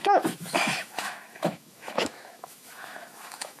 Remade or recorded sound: remade